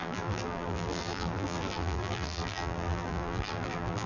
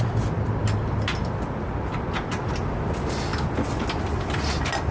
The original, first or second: second